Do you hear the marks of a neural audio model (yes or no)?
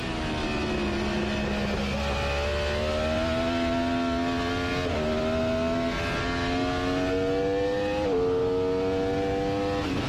no